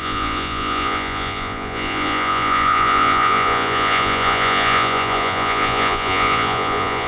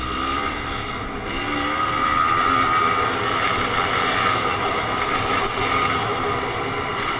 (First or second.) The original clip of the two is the second